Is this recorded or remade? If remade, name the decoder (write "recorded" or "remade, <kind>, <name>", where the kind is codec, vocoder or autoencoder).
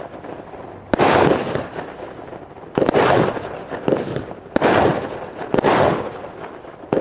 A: recorded